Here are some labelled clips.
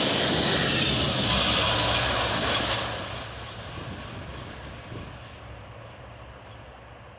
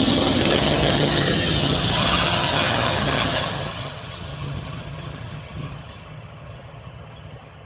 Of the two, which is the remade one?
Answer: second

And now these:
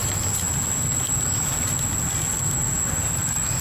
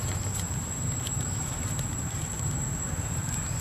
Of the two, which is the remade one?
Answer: second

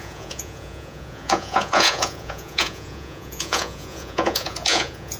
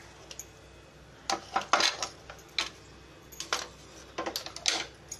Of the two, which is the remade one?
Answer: first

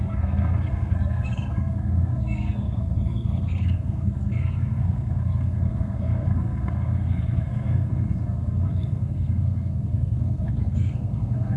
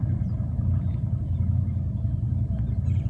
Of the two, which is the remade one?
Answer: first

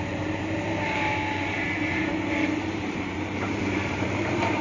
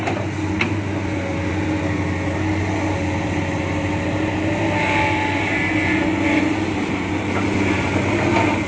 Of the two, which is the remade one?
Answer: first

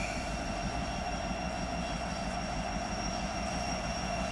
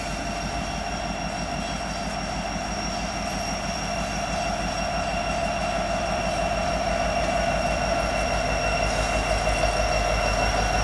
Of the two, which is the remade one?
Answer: first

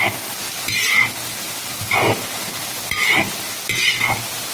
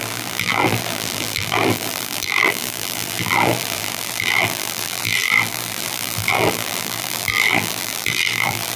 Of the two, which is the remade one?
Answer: second